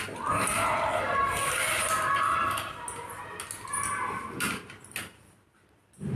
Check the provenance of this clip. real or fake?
real